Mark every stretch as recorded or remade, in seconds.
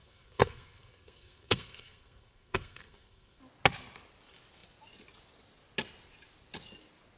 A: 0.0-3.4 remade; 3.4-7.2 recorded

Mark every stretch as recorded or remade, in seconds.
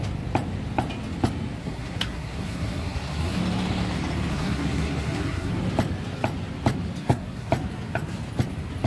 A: 0.0-1.6 recorded; 1.6-3.4 remade; 3.4-4.3 recorded; 4.3-5.5 remade; 5.5-7.0 recorded; 7.0-7.5 remade; 7.5-8.9 recorded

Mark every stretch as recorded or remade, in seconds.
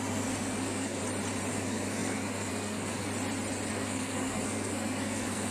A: 0.0-1.0 remade; 1.0-1.5 recorded; 1.5-3.1 remade; 3.1-3.7 recorded; 3.7-5.5 remade